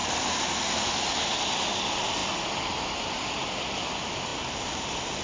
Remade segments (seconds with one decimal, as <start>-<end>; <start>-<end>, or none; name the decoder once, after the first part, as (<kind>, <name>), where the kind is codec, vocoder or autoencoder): none